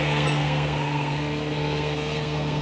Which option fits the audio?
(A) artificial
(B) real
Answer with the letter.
A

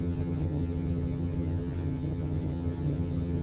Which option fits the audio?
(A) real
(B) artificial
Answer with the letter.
B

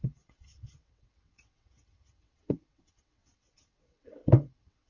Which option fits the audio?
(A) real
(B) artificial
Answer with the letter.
B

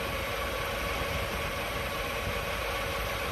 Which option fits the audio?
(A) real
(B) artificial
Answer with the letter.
B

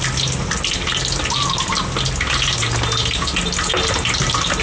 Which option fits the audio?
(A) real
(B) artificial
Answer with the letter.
A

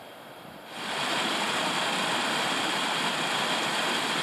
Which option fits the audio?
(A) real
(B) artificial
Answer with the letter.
A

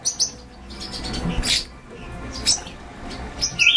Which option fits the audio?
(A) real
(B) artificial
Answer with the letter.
A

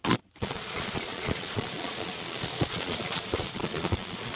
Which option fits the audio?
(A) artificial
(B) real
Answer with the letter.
A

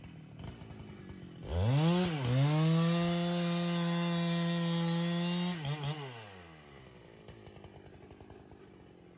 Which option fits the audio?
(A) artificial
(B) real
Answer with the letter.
B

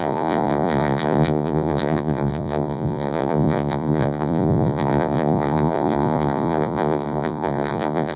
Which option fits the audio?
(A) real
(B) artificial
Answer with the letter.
B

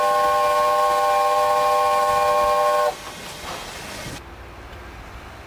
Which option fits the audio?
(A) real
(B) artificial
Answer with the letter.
A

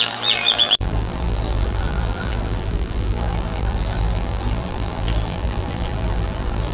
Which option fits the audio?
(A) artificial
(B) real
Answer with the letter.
A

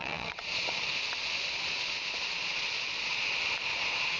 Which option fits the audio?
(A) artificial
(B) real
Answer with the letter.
A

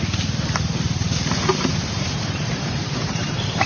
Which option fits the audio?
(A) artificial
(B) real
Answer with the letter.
A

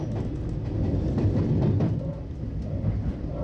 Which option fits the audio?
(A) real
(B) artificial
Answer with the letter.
A